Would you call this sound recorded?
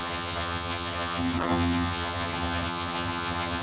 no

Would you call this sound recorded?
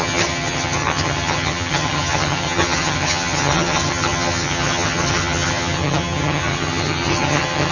no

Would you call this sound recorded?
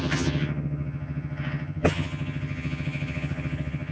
no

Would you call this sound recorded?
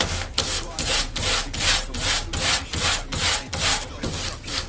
yes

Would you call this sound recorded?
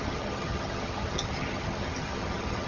no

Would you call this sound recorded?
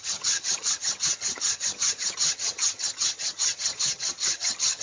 no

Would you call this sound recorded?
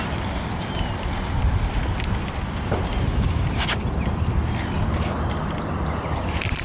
yes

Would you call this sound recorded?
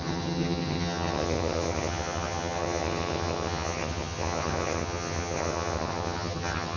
no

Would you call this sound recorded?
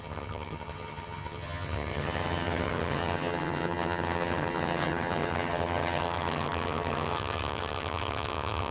no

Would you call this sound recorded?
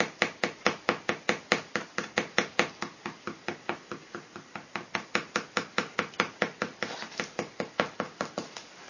yes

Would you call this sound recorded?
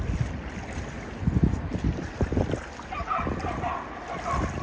yes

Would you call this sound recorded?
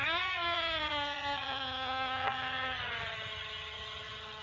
no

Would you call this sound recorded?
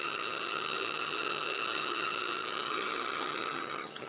no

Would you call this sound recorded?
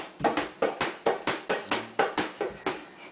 yes